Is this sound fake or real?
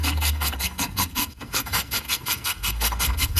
fake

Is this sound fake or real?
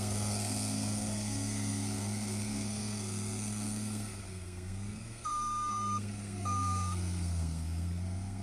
fake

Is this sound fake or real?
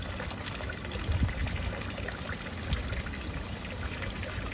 real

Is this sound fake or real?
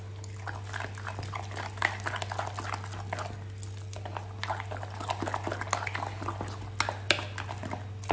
real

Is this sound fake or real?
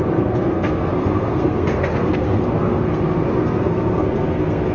fake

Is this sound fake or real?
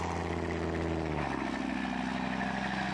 real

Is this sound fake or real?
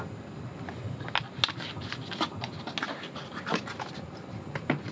real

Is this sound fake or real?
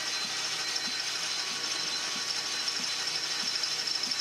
real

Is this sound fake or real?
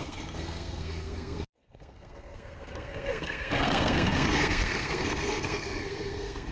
fake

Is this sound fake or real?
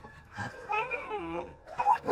fake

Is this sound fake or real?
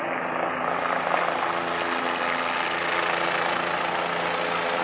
real